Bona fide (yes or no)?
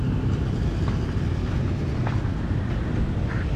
yes